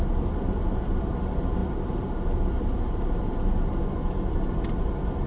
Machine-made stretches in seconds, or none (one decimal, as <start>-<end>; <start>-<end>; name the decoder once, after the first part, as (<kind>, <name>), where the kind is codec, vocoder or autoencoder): none